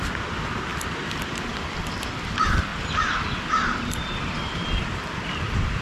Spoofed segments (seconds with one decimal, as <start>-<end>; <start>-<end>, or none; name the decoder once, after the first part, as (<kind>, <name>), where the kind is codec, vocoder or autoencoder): 0.0-2.7 (vocoder, BigVGAN v2); 3.4-5.8